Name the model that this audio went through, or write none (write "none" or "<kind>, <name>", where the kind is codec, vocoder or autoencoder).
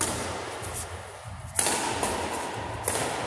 none